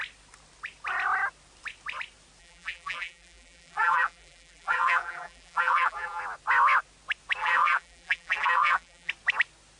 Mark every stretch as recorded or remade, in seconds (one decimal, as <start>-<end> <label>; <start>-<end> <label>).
0.0-2.4 recorded; 2.4-6.2 remade; 6.2-7.4 recorded; 7.4-9.1 remade; 9.1-9.8 recorded